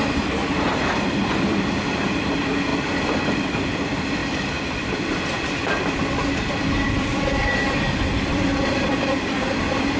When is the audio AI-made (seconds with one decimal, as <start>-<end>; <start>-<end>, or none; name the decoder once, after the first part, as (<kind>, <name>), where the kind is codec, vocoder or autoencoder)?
0.0-4.2 (vocoder, BigVGAN v2); 7.5-10.0